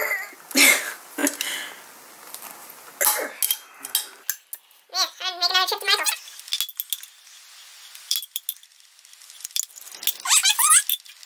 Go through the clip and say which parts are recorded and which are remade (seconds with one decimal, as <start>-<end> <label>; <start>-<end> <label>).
0.0-11.3 recorded